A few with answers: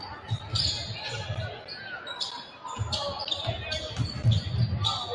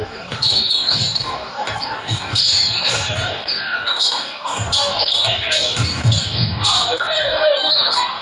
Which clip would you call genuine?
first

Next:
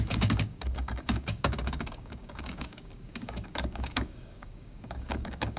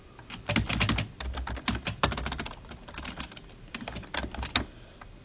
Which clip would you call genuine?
second